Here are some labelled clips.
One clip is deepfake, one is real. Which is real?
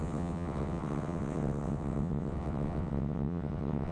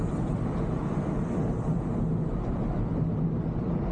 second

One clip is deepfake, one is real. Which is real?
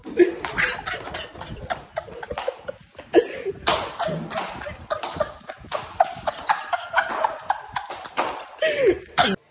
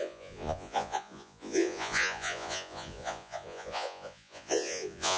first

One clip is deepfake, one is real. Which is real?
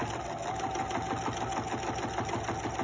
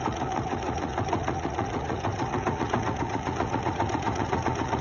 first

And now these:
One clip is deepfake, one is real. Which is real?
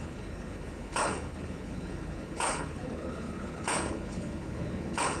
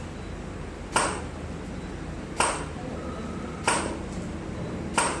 second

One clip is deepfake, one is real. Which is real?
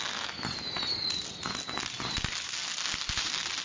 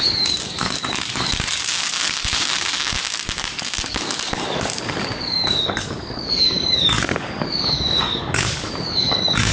first